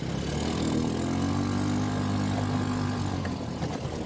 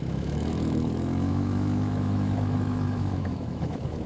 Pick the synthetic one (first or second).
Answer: second